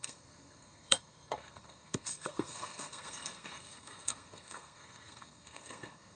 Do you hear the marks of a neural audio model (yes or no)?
yes